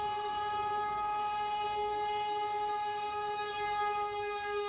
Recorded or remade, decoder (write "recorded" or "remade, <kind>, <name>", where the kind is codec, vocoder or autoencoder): remade, codec, DAC